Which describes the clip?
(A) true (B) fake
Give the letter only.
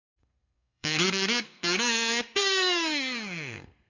B